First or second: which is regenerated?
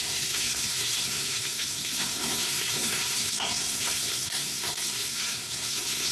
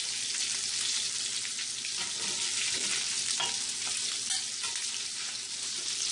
first